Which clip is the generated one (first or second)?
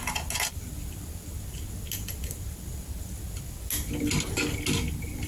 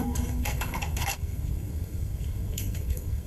second